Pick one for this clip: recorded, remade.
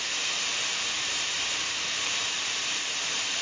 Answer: remade